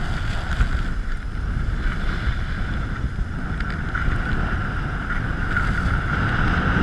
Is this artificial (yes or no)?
no